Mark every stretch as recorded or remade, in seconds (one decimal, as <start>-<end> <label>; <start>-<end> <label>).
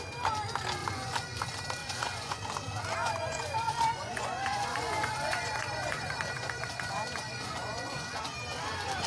0.0-0.8 recorded; 0.8-1.4 remade; 1.4-1.8 recorded; 1.8-2.4 remade; 2.4-3.0 recorded; 3.0-8.2 remade; 8.2-9.1 recorded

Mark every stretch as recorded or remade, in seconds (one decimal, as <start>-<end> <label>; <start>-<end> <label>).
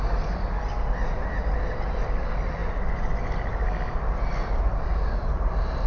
0.0-5.9 recorded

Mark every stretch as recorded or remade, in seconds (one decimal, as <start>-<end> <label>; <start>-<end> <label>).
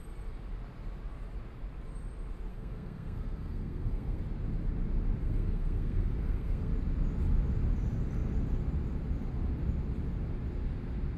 0.0-2.5 recorded; 2.5-4.2 remade; 4.2-5.2 recorded; 5.2-6.7 remade; 6.7-11.2 recorded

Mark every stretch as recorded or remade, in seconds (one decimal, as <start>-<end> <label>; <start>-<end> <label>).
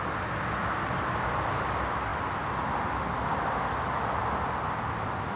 0.0-5.4 recorded